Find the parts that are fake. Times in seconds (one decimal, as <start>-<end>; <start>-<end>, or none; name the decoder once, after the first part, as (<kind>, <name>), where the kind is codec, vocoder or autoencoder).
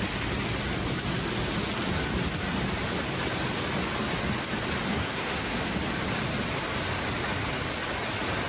4.9-5.6 (codec, SNAC)